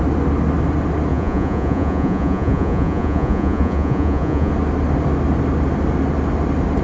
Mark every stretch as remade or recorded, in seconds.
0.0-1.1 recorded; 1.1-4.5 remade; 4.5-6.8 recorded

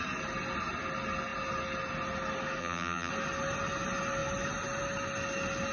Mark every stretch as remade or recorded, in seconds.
0.0-2.6 recorded; 2.6-3.1 remade; 3.1-5.7 recorded

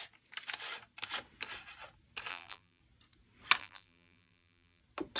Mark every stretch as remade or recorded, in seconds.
0.0-2.3 recorded; 2.3-2.8 remade; 2.8-3.6 recorded; 3.6-4.8 remade; 4.8-5.2 recorded

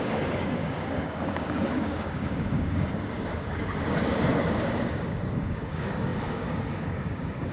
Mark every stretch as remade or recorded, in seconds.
0.0-7.5 remade

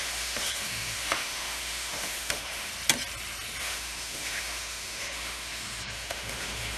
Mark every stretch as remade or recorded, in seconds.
0.0-2.7 remade; 2.7-3.6 recorded; 3.6-6.8 remade

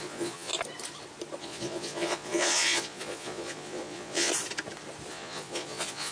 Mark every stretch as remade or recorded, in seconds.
0.0-0.5 remade; 0.5-1.4 recorded; 1.4-4.3 remade; 4.3-5.1 recorded; 5.1-6.1 remade

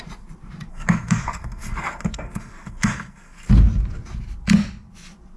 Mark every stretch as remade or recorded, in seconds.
0.0-0.7 recorded; 0.7-3.5 remade; 3.5-5.4 recorded

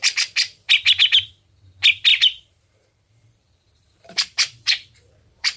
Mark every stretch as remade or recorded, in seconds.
0.0-2.1 recorded; 2.1-5.6 remade